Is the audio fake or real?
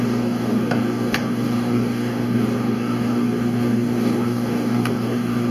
fake